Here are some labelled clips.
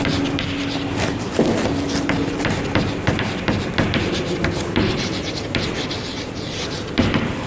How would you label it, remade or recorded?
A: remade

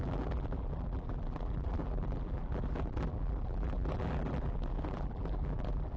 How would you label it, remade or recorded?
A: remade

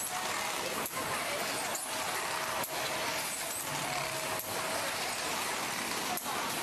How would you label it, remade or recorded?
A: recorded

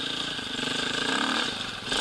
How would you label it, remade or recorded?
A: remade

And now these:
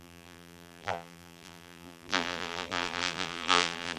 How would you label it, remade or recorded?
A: remade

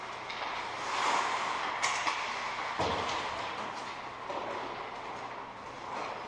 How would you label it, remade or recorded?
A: recorded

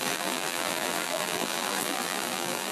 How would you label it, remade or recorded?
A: remade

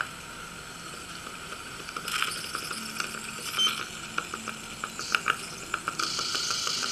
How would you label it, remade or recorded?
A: recorded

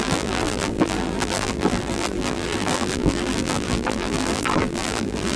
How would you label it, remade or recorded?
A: remade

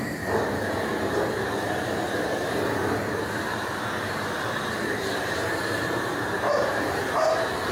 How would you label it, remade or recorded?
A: remade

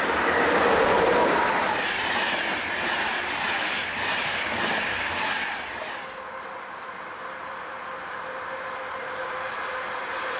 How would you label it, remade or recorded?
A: remade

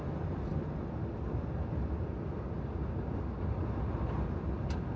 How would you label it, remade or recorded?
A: recorded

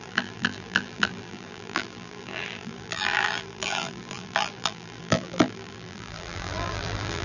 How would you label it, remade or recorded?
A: remade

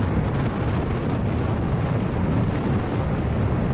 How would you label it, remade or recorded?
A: recorded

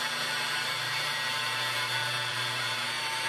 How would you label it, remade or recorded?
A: remade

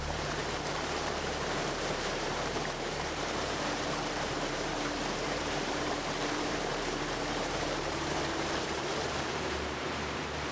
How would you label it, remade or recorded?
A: remade